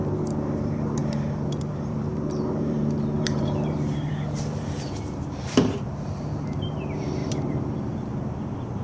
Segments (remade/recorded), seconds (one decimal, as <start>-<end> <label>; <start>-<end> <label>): 0.0-8.8 remade